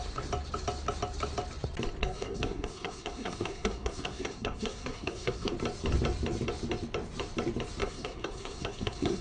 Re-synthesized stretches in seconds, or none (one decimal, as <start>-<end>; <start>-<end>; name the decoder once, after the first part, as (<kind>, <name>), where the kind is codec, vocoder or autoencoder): 2.0-5.5 (codec, SNAC); 7.8-9.2